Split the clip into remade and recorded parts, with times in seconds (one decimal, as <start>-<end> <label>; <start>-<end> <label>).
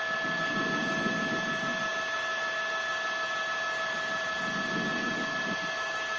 0.0-6.2 recorded